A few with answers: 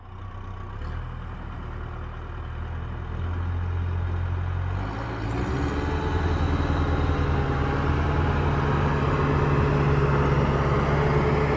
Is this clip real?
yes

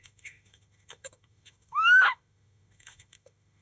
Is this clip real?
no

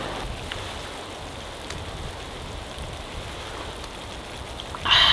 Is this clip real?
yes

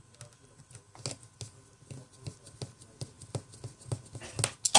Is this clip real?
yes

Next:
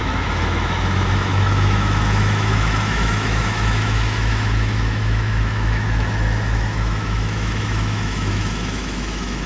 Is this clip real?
no